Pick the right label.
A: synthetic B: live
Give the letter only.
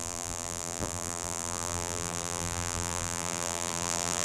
A